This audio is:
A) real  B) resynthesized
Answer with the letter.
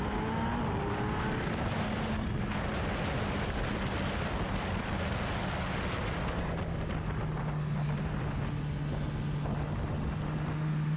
A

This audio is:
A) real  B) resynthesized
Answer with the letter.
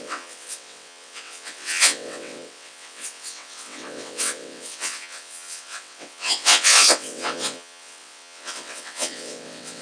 B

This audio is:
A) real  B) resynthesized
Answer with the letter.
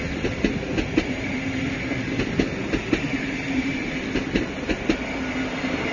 A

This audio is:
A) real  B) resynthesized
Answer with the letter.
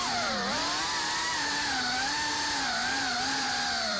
B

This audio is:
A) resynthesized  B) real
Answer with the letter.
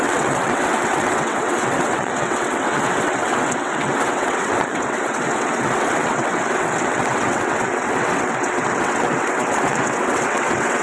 A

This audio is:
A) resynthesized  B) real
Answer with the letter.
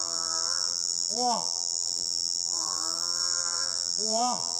A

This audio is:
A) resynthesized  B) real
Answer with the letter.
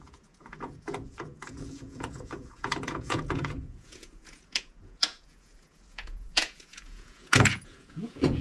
A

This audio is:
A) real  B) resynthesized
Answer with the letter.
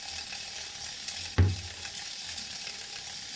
A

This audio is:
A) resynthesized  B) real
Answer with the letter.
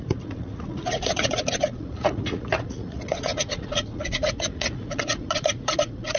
A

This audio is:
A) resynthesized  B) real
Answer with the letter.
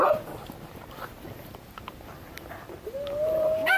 B